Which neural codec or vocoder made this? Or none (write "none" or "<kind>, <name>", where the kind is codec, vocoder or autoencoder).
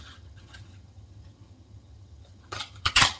vocoder, HiFi-GAN